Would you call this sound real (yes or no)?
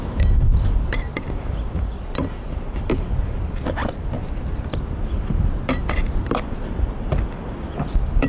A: no